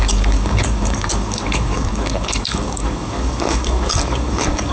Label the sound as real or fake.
fake